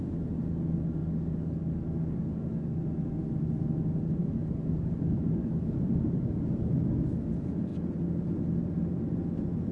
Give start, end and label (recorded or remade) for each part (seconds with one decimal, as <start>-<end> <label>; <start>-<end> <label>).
0.0-1.0 recorded; 1.0-2.8 remade; 2.8-4.2 recorded; 4.2-6.7 remade; 6.7-9.7 recorded